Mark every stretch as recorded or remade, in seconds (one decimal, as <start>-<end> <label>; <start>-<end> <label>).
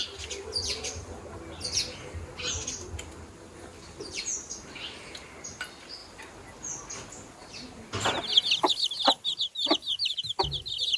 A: 0.0-11.0 recorded